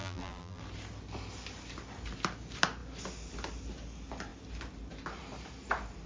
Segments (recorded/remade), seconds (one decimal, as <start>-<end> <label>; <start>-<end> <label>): 0.0-0.6 remade; 0.6-6.1 recorded